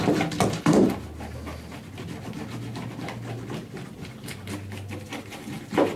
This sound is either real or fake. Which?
real